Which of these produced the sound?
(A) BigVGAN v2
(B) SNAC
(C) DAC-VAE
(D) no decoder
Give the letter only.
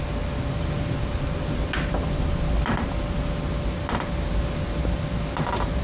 D